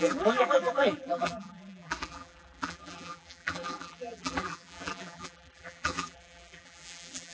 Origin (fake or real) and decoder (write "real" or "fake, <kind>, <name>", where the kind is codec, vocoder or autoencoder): fake, vocoder, BigVGAN v2